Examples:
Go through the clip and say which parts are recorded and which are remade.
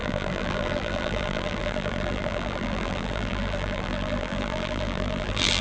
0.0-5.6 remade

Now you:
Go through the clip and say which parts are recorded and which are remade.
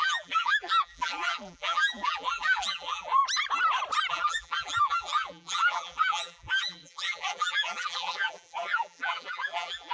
0.0-3.2 remade; 3.2-4.1 recorded; 4.1-9.9 remade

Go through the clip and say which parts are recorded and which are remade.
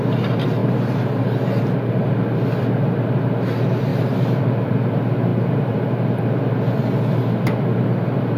0.0-0.6 recorded; 0.6-1.9 remade; 1.9-3.9 recorded; 3.9-4.7 remade; 4.7-5.3 recorded; 5.3-6.2 remade; 6.2-8.4 recorded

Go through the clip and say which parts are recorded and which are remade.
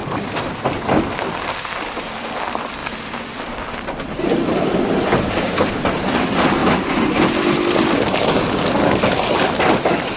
0.0-0.5 remade; 0.5-2.8 recorded; 2.8-3.5 remade; 3.5-10.2 recorded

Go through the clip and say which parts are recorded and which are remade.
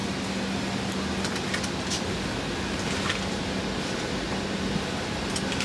0.0-5.6 recorded